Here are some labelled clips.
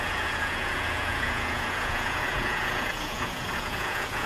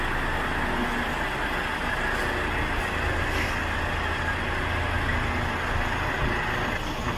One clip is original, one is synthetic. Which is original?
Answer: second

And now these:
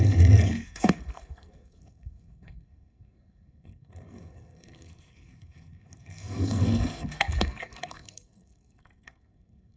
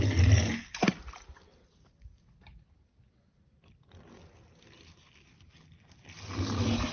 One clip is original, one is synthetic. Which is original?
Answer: second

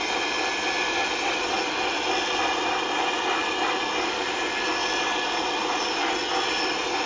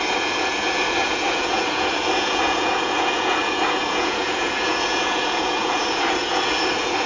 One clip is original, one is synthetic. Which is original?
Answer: first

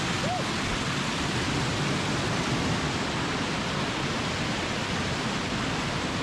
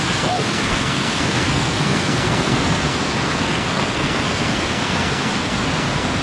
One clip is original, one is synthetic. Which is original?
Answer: first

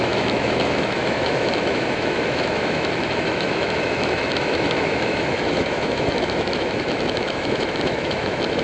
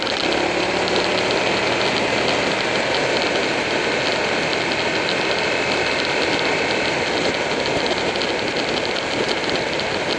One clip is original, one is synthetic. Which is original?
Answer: second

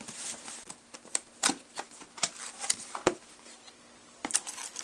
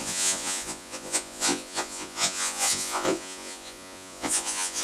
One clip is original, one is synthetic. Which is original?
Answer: first